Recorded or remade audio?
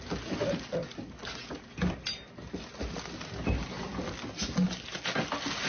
recorded